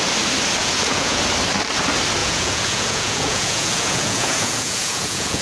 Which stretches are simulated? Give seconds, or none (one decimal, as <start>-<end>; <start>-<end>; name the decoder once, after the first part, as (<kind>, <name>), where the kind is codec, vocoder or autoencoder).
0.6-1.2 (vocoder, Vocos); 2.2-5.4